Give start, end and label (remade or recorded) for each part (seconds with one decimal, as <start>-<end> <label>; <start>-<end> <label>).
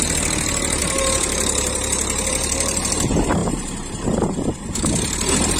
0.0-0.8 recorded; 0.8-2.9 remade; 2.9-3.4 recorded; 3.4-5.6 remade